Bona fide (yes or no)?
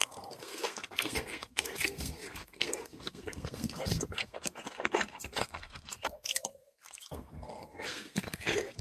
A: no